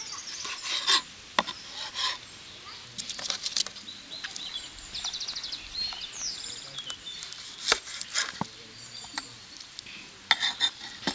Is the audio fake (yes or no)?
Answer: no